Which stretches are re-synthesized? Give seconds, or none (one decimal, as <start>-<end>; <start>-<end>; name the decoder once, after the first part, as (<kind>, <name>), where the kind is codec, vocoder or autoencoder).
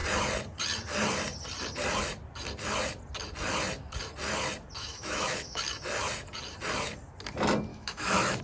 4.8-5.6 (autoencoder, DAC-VAE); 7.7-8.4